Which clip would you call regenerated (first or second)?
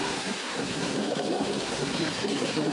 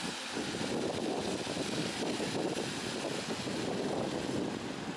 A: first